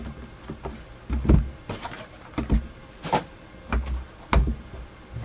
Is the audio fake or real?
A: real